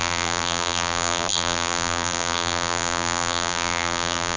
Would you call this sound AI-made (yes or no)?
yes